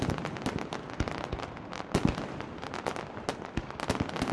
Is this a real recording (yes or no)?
yes